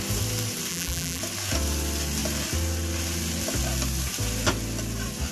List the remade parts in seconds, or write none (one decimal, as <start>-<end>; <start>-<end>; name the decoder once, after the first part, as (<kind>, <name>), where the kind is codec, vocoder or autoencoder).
0.7-1.2 (vocoder, BigVGAN v2)